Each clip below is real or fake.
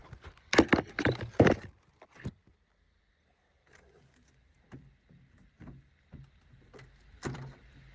real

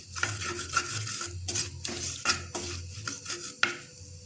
real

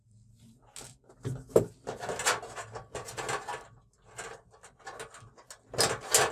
real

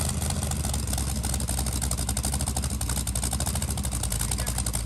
real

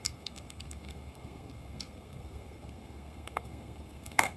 fake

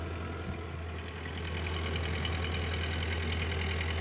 real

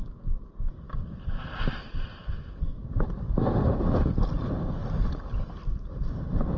real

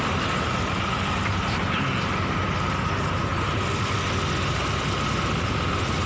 real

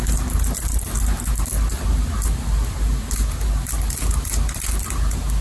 real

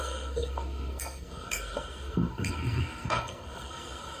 fake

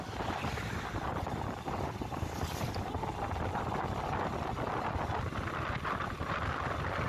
real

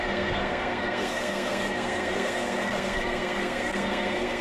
fake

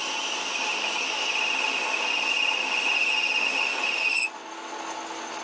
real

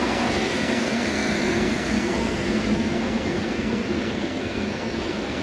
fake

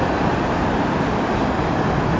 real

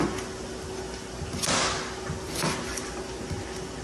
real